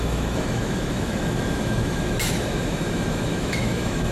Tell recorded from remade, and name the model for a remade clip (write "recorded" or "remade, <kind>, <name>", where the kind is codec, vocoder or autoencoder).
remade, autoencoder, DAC-VAE